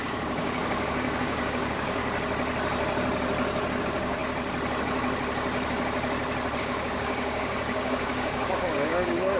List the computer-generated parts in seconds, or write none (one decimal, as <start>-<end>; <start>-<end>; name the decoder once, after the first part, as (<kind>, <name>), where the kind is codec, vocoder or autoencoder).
0.0-2.0 (codec, DAC); 3.8-4.2; 6.6-9.4